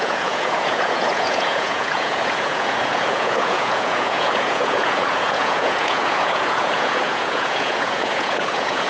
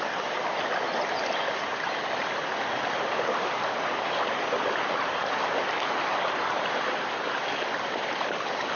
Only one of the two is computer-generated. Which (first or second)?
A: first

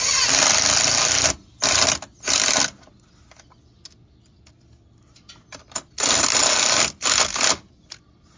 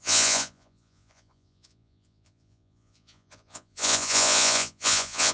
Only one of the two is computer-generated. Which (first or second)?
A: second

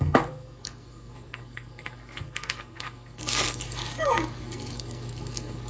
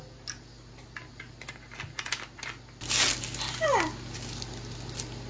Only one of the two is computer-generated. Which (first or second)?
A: first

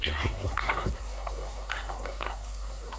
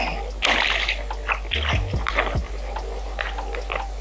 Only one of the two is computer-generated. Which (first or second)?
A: first